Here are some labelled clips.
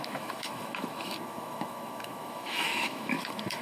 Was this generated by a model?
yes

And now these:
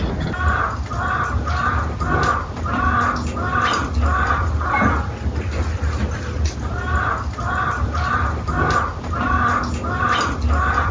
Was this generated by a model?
no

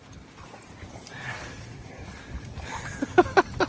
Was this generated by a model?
no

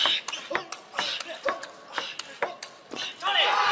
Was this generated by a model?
no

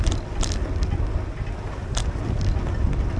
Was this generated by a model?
no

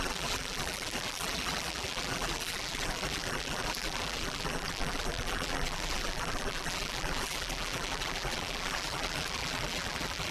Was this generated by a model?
yes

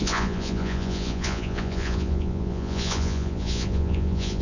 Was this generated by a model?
yes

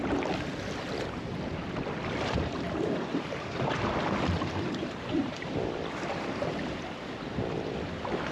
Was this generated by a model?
yes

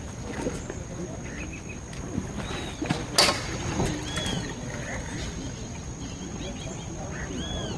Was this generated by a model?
no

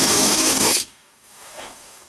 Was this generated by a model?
yes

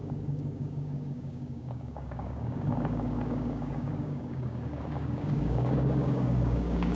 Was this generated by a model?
yes